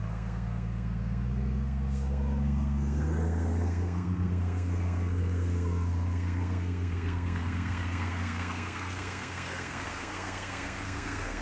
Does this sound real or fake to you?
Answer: fake